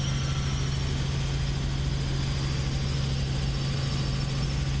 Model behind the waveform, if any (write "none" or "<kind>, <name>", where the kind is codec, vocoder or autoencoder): none